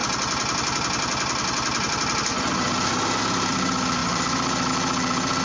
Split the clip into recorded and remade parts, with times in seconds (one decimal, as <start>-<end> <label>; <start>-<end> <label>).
0.0-5.4 recorded